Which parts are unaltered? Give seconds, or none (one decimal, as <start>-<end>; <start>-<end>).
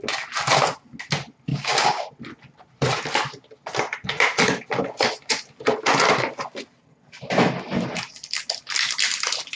0.0-1.5; 2.1-9.6